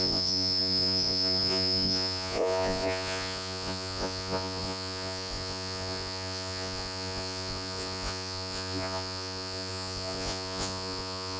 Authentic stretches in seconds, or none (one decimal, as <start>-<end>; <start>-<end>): none